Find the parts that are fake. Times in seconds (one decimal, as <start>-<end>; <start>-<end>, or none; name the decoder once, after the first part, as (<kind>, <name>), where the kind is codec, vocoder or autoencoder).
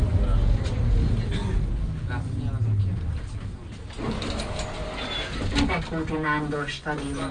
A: none